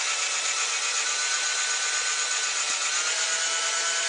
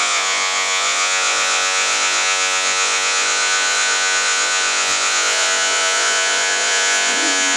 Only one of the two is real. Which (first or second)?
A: first